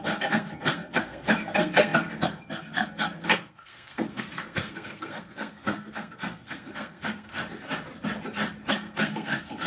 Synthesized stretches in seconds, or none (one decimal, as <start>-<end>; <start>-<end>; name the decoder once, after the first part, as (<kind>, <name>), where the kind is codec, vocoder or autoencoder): 0.0-7.4 (codec, SNAC); 8.7-9.7